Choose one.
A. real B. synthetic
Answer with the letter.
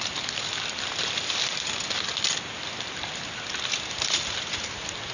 A